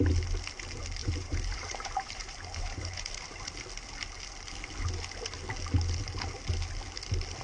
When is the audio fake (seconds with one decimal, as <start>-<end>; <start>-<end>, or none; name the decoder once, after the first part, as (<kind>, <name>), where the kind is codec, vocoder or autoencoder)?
1.0-3.4 (vocoder, BigVGAN v2)